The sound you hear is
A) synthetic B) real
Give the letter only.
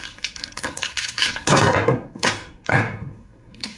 A